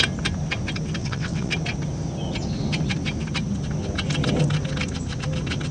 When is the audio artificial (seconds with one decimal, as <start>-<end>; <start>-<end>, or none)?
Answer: 1.0-1.5